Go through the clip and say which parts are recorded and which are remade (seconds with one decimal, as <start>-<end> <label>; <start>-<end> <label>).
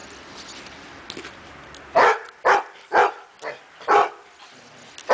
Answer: 0.0-5.1 recorded